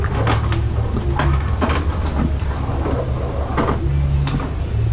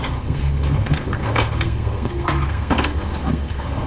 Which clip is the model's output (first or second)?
second